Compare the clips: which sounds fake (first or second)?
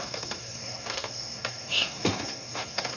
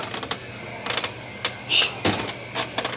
first